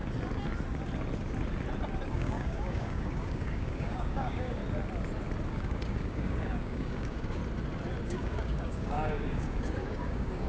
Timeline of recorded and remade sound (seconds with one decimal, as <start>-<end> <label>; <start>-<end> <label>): 0.0-2.1 recorded; 2.1-4.6 remade; 4.6-5.5 recorded; 5.5-7.4 remade; 7.4-8.0 recorded; 8.0-10.5 remade